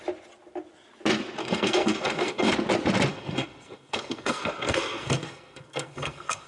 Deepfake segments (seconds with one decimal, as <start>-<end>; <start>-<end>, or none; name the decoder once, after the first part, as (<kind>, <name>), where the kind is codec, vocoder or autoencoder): 1.4-2.5 (codec, SNAC); 3.1-6.5